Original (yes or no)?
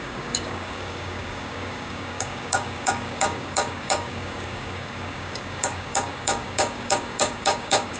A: no